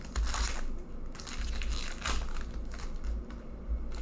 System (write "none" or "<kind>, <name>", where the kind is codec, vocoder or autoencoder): none